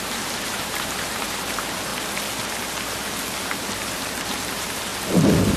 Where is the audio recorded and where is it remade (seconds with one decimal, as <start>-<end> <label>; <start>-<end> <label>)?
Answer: 0.0-1.9 remade; 1.9-3.4 recorded; 3.4-4.9 remade; 4.9-5.6 recorded